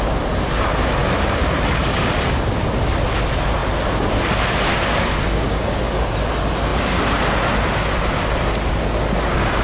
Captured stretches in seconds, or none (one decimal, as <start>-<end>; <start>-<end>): 0.0-4.7; 6.1-9.6